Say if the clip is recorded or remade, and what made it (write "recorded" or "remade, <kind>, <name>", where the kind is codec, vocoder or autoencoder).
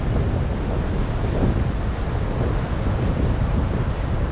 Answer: recorded